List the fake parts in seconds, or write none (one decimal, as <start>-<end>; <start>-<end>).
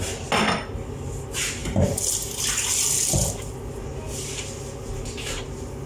none